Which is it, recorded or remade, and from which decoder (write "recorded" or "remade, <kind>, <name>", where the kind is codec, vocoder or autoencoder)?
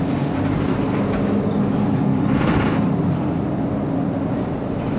recorded